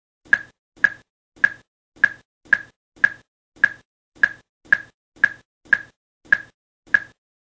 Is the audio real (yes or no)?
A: yes